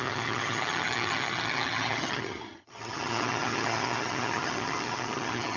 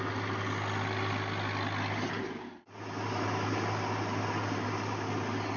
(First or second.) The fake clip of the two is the first